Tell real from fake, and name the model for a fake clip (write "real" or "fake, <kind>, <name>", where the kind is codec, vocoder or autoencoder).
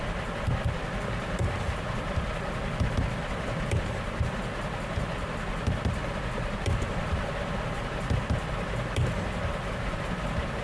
real